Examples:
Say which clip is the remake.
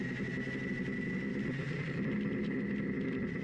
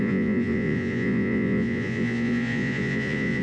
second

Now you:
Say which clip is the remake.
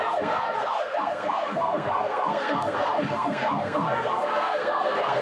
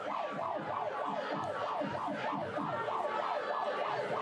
first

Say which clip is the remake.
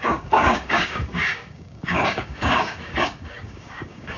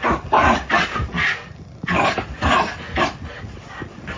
first